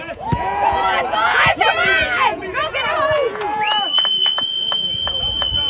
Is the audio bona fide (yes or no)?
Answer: no